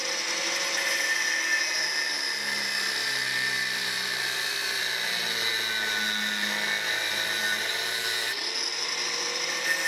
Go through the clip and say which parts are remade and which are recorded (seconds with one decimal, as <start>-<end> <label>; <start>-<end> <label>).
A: 0.0-3.0 recorded; 3.0-4.8 remade; 4.8-9.9 recorded